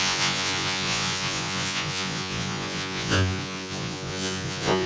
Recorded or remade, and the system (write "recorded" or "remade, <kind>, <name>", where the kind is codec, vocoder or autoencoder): remade, vocoder, Vocos